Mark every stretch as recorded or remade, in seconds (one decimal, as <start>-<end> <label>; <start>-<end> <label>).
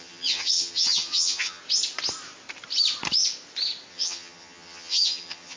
0.0-1.6 remade; 1.6-3.9 recorded; 3.9-5.6 remade